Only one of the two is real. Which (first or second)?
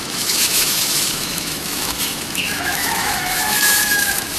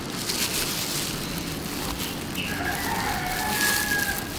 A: second